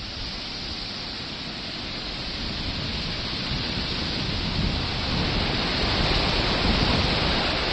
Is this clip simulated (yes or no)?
no